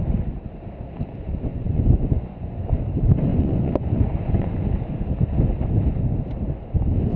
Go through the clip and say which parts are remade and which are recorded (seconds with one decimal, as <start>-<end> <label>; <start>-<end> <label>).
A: 0.0-1.5 recorded; 1.5-2.6 remade; 2.6-3.3 recorded; 3.3-4.5 remade; 4.5-7.2 recorded